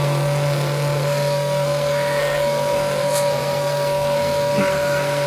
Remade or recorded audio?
remade